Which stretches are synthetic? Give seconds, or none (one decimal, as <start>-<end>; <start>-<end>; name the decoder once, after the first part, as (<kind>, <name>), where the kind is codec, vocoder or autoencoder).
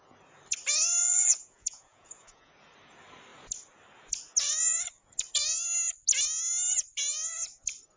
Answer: 1.0-2.5 (vocoder, Vocos)